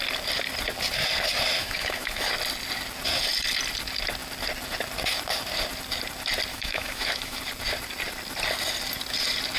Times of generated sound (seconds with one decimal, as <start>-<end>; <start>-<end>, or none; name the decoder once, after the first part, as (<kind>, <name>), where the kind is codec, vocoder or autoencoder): 1.6-2.3 (autoencoder, DAC-VAE); 6.5-7.4